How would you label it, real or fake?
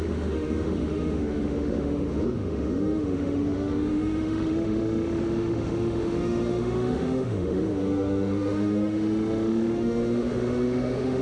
fake